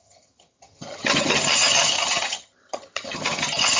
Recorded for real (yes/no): no